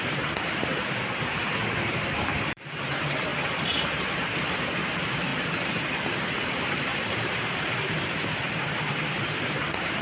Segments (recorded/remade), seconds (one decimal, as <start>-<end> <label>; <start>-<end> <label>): 0.0-0.7 remade; 0.7-1.7 recorded; 1.7-3.3 remade; 3.3-4.6 recorded; 4.6-5.3 remade; 5.3-6.2 recorded; 6.2-10.0 remade